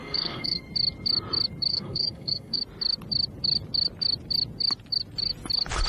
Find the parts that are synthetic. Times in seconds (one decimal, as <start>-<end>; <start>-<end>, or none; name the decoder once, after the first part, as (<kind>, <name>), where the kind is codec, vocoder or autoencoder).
0.0-0.6 (codec, SNAC); 1.7-2.6